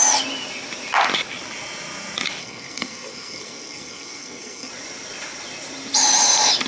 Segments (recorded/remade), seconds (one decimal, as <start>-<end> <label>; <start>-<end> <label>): 0.0-2.4 recorded; 2.4-4.7 remade; 4.7-6.7 recorded